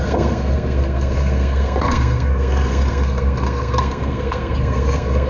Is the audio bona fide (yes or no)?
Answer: no